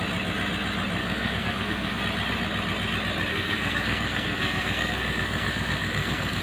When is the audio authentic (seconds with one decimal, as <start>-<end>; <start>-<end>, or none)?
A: 0.0-1.0; 2.0-3.3